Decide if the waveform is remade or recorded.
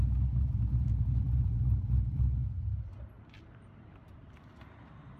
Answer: remade